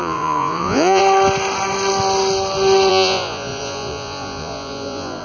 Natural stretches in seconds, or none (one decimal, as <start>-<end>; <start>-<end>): 1.0-2.9